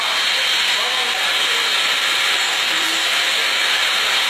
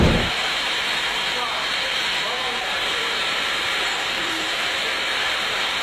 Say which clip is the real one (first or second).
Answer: first